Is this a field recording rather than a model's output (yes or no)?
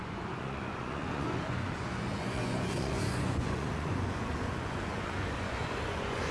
no